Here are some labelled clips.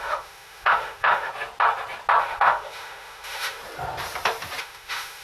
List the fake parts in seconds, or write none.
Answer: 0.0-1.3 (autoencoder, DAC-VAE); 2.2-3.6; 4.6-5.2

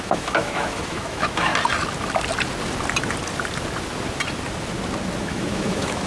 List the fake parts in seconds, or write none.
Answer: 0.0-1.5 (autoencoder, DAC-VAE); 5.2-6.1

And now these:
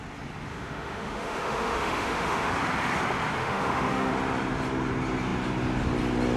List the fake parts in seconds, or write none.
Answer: 0.5-2.5 (autoencoder, DAC-VAE); 3.4-4.1

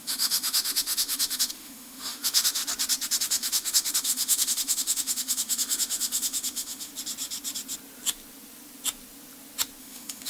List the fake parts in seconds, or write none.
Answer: 0.0-2.6 (autoencoder, DAC-VAE); 3.2-6.9; 9.8-10.3